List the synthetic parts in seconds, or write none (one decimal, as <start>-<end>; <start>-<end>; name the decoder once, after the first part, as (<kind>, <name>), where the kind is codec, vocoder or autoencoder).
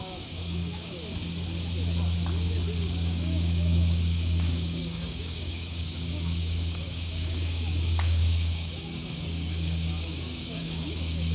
0.0-1.0 (codec, DAC); 2.8-11.3